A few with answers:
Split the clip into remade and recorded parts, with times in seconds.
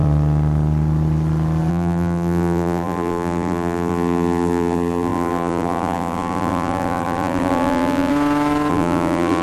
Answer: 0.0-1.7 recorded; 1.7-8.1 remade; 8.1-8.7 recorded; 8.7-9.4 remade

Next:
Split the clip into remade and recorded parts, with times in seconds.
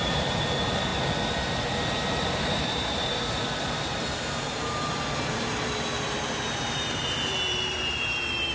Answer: 0.0-0.9 remade; 0.9-2.1 recorded; 2.1-8.5 remade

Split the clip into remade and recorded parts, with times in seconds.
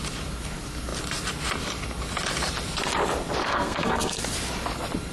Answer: 0.0-3.4 recorded; 3.4-4.2 remade; 4.2-5.1 recorded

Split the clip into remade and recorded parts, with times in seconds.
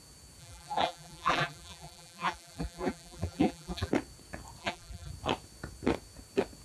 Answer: 0.0-0.4 recorded; 0.4-3.9 remade; 3.9-4.6 recorded; 4.6-5.1 remade; 5.1-6.6 recorded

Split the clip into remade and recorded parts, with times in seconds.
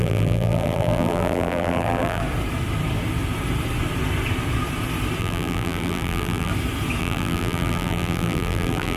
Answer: 0.0-2.2 remade; 2.2-5.2 recorded; 5.2-6.5 remade; 6.5-7.0 recorded; 7.0-9.0 remade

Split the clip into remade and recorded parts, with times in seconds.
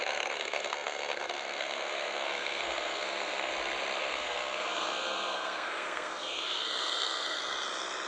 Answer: 0.0-3.5 remade; 3.5-4.0 recorded; 4.0-7.4 remade; 7.4-8.1 recorded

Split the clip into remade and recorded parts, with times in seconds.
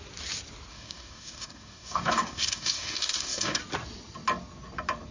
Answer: 0.0-0.7 recorded; 0.7-3.6 remade; 3.6-5.1 recorded